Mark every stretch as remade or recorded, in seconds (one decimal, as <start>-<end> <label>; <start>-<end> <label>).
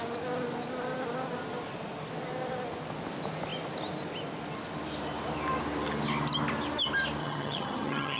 0.0-7.2 recorded; 7.2-8.2 remade